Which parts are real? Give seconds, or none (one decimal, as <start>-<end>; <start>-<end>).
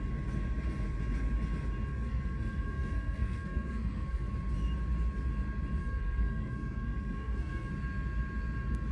0.0-1.9; 4.3-5.8; 7.7-8.9